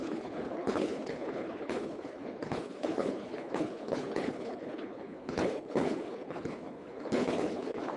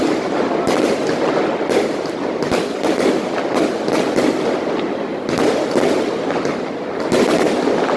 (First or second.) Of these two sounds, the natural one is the second